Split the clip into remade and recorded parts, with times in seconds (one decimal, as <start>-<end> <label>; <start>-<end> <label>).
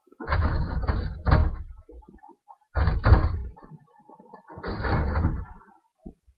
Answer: 0.0-0.7 remade; 0.7-6.4 recorded